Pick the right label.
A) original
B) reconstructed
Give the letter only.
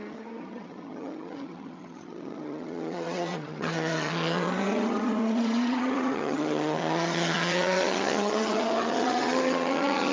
B